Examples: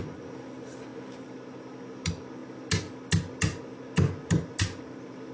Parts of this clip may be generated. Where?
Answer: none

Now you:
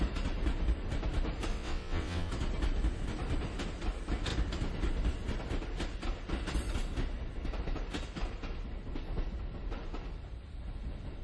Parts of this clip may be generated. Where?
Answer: 1.5-2.3